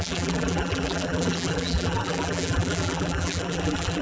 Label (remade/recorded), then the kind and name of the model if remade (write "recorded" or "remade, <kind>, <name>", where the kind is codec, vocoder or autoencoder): remade, vocoder, BigVGAN v2